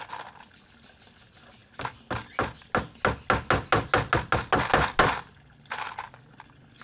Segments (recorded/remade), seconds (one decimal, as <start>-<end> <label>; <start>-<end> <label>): 0.0-6.8 recorded